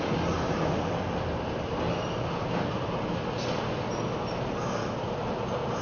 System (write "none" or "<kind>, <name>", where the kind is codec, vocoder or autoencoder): none